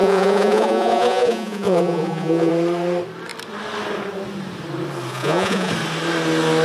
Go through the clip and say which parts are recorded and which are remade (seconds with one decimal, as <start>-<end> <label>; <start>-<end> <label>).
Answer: 0.0-2.5 remade; 2.5-5.1 recorded; 5.1-5.7 remade; 5.7-6.6 recorded